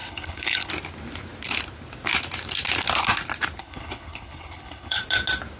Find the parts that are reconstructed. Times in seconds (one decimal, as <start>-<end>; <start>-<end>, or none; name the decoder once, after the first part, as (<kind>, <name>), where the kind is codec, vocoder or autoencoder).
0.0-0.7 (codec, HILCodec); 3.6-5.0